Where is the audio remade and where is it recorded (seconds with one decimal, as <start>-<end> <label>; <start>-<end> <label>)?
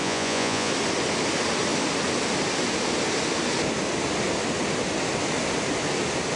0.0-0.7 remade; 0.7-6.4 recorded